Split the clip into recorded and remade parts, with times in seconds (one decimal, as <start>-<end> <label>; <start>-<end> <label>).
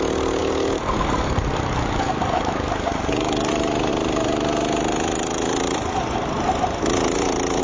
0.0-0.4 recorded; 0.4-3.5 remade; 3.5-7.6 recorded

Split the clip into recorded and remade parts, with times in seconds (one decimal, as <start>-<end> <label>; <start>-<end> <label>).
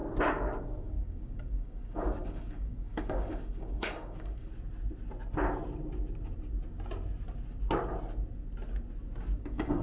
0.0-0.6 recorded; 0.6-4.5 remade; 4.5-9.4 recorded; 9.4-9.8 remade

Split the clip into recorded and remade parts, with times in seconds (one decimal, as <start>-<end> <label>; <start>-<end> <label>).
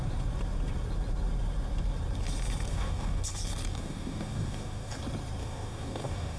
0.0-2.7 recorded; 2.7-3.2 remade; 3.2-3.7 recorded; 3.7-5.0 remade; 5.0-5.4 recorded; 5.4-6.4 remade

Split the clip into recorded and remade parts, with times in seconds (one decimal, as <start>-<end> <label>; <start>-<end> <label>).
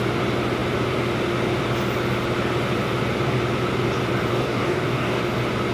0.0-4.3 recorded; 4.3-5.2 remade; 5.2-5.7 recorded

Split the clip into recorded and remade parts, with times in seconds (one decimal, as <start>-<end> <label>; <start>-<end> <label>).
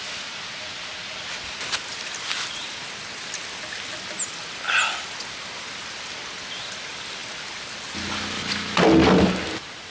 0.0-9.9 recorded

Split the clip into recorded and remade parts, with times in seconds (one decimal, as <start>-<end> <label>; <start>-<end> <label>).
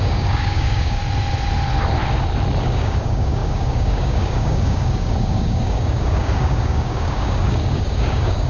0.0-1.0 remade; 1.0-2.6 recorded; 2.6-8.5 remade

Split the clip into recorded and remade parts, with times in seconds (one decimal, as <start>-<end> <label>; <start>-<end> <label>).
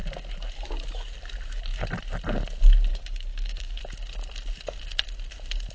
0.0-2.9 recorded; 2.9-3.8 remade; 3.8-5.7 recorded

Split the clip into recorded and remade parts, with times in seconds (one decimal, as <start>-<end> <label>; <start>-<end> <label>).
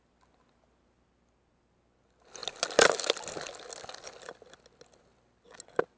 0.0-6.0 recorded